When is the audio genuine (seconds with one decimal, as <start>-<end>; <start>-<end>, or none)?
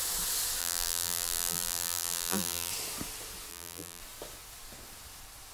0.0-0.6; 2.7-3.5; 4.0-5.5